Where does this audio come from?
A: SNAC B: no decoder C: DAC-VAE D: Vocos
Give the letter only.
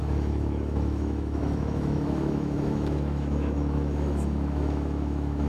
C